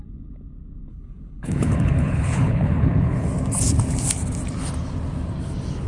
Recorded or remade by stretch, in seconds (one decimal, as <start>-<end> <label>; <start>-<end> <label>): 0.0-0.9 recorded; 0.9-3.3 remade; 3.3-5.9 recorded